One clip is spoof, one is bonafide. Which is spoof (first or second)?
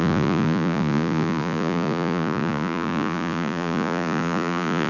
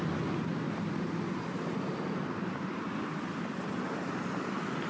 first